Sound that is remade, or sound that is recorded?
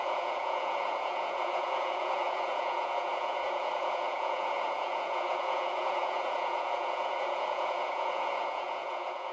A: remade